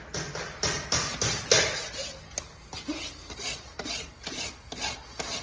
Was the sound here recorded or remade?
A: recorded